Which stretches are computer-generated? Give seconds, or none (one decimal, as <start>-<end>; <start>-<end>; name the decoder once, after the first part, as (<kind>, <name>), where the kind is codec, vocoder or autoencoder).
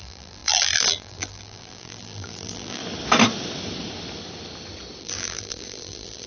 0.0-2.8 (vocoder, BigVGAN v2); 5.0-6.3